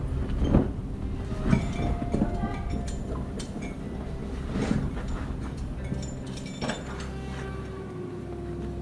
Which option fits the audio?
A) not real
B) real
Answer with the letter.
B